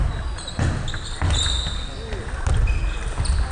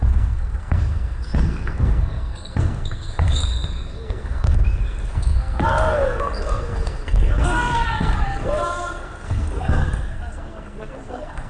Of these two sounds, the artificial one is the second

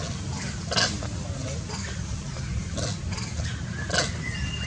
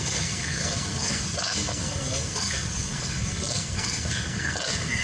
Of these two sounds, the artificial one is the second